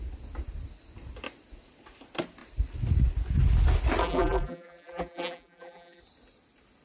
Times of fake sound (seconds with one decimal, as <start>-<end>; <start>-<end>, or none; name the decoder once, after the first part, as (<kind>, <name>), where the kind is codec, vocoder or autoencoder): 4.0-6.0 (vocoder, BigVGAN v2)

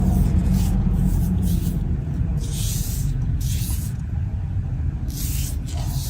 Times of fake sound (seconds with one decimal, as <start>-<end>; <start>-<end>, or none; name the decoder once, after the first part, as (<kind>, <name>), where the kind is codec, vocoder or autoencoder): 0.4-1.6 (vocoder, Vocos); 2.3-4.0

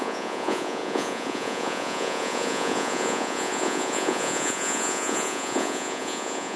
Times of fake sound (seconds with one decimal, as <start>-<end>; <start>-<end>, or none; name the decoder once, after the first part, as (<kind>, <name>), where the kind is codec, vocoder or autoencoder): 0.0-6.6 (vocoder, Vocos)

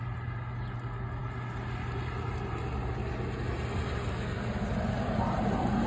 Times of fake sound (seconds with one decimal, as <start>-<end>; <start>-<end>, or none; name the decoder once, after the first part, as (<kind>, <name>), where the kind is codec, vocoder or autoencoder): none

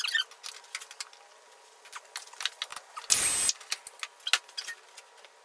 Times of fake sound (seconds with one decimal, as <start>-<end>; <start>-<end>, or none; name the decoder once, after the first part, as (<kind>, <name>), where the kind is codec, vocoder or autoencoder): none

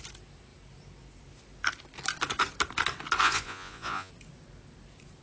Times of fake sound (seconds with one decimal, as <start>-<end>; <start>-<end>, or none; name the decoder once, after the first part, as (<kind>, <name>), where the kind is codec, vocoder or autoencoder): 3.2-4.1 (vocoder, Vocos)

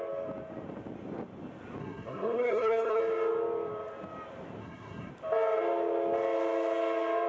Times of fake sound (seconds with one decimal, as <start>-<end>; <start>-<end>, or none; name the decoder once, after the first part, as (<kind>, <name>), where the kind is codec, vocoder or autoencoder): 1.8-3.0 (codec, SNAC); 4.6-5.1

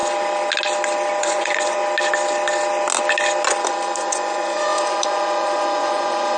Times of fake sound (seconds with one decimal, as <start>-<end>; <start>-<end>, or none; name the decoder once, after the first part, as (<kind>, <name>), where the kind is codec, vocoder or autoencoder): 1.2-1.8 (vocoder, Vocos); 4.0-6.4